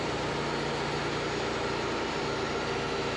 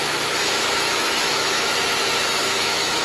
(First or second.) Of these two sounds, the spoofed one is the second